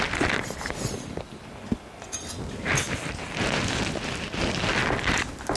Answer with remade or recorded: recorded